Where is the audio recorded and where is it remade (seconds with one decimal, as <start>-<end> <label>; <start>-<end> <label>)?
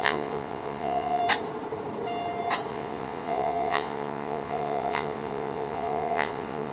0.0-1.2 remade; 1.2-2.7 recorded; 2.7-6.7 remade